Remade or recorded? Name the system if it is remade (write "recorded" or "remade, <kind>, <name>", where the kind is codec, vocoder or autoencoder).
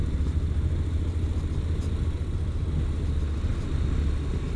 recorded